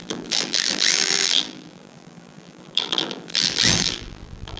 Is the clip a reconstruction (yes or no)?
yes